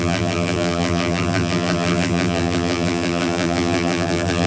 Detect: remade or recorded remade